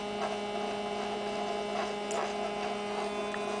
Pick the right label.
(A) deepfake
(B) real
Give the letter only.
B